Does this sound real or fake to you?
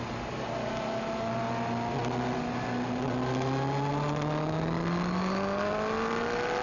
real